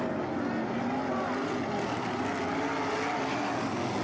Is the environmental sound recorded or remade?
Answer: recorded